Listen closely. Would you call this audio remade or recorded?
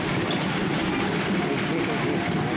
recorded